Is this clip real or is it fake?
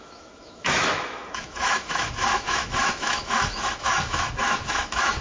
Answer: fake